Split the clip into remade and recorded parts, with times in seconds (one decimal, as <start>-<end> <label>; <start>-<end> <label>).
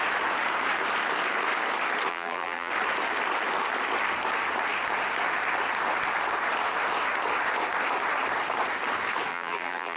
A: 0.0-2.1 recorded; 2.1-2.7 remade; 2.7-9.3 recorded; 9.3-10.0 remade